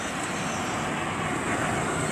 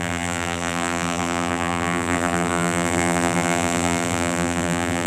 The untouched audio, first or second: first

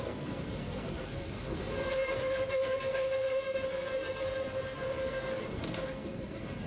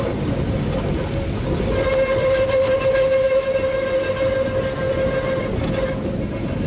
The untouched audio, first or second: second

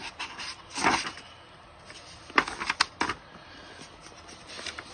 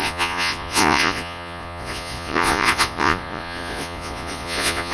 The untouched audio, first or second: first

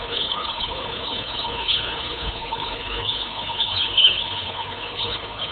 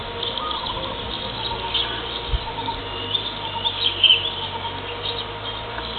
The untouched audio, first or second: second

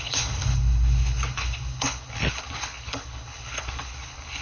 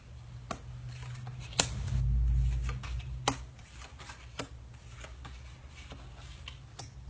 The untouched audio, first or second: second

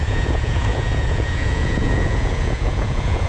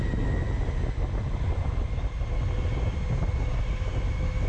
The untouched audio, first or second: second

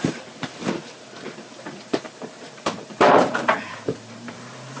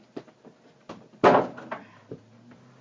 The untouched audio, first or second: second